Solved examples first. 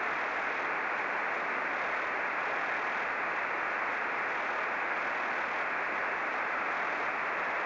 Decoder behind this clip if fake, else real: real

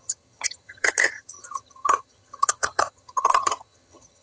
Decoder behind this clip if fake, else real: fake, vocoder, HiFi-GAN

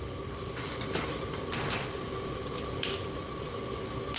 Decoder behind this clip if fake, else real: real